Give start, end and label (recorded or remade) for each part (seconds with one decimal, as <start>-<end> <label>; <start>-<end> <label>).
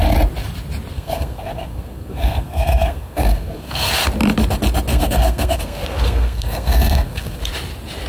0.0-0.9 recorded; 0.9-3.9 remade; 3.9-4.9 recorded; 4.9-7.4 remade; 7.4-8.1 recorded